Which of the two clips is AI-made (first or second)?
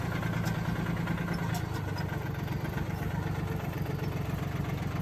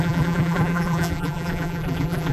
second